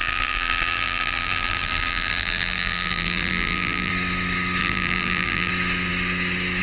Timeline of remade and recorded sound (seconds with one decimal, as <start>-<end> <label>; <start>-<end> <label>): 0.0-3.9 remade; 3.9-4.6 recorded; 4.6-5.5 remade; 5.5-6.6 recorded